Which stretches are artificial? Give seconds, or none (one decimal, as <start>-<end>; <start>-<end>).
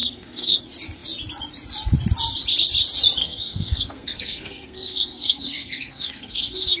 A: 0.0-0.6; 3.2-6.8